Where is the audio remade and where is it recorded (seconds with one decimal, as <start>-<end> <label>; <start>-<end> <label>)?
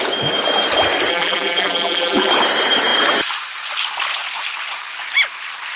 0.0-1.1 recorded; 1.1-2.3 remade; 2.3-5.8 recorded